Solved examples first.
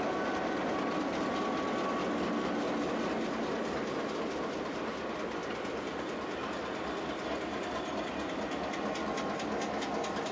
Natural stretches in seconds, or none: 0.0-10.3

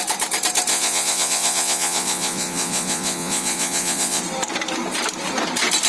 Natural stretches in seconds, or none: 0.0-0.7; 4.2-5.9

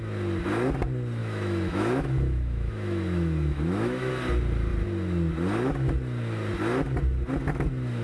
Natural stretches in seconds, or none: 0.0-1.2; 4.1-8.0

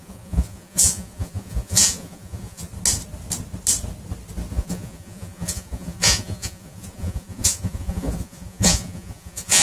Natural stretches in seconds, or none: 2.7-4.5

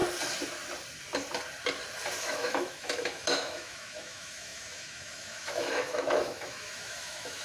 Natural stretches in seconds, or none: 0.0-2.2

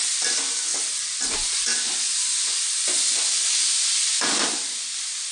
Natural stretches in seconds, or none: 0.0-5.3